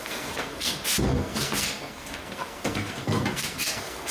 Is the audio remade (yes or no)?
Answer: yes